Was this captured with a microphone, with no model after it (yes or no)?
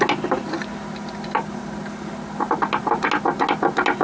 yes